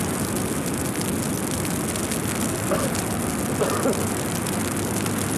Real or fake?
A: real